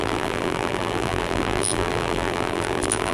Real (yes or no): no